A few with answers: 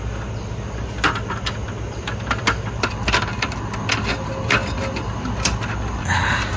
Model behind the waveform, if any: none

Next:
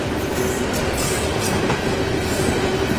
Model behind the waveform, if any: none